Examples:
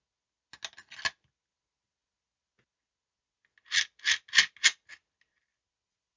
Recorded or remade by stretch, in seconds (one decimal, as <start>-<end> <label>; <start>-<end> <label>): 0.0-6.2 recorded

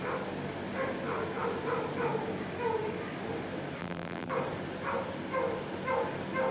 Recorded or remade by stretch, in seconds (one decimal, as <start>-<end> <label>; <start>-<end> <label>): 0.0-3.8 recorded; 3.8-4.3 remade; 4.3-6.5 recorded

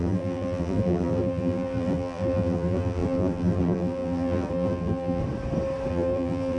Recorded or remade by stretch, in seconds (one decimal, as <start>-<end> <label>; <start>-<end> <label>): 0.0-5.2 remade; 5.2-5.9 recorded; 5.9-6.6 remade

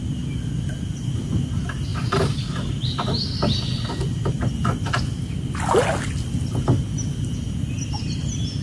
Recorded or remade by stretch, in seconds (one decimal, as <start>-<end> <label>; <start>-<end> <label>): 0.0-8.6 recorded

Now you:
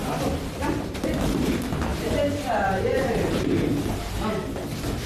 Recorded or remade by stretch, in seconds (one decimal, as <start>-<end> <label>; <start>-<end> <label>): 0.0-1.5 remade; 1.5-1.9 recorded; 1.9-3.5 remade; 3.5-5.1 recorded

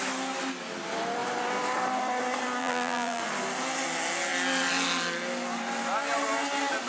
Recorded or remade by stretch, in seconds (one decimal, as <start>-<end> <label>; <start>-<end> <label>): 0.0-2.6 recorded; 2.6-3.2 remade; 3.2-6.9 recorded

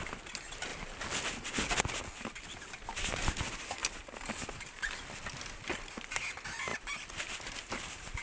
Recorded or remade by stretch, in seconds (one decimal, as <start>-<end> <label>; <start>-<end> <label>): 0.0-0.7 recorded; 0.7-1.8 remade; 1.8-6.7 recorded; 6.7-7.7 remade; 7.7-8.2 recorded

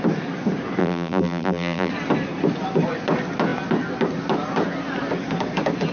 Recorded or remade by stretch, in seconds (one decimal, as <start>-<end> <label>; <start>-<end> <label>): 0.0-0.8 recorded; 0.8-1.9 remade; 1.9-5.9 recorded